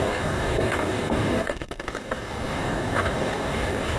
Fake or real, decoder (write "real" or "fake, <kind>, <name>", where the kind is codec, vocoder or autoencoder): fake, codec, DAC